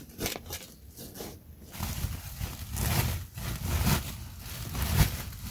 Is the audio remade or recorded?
recorded